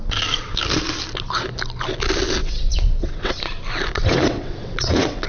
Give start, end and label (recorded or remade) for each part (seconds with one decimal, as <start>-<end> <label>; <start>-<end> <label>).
0.0-2.4 recorded; 2.4-3.4 remade; 3.4-4.0 recorded; 4.0-5.3 remade